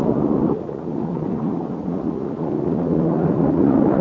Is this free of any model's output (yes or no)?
no